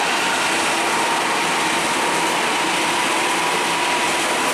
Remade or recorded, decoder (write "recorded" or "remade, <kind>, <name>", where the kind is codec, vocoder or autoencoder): recorded